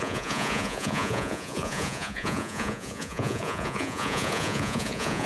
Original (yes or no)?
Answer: no